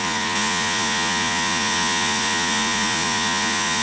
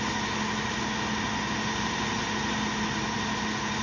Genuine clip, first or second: second